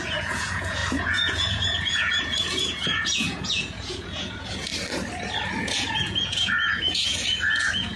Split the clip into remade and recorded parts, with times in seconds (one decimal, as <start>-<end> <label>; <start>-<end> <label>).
0.0-4.7 remade; 4.7-5.6 recorded; 5.6-8.0 remade